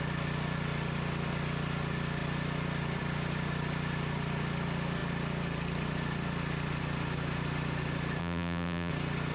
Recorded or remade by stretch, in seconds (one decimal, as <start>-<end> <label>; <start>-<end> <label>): 0.0-8.2 recorded; 8.2-8.9 remade; 8.9-9.3 recorded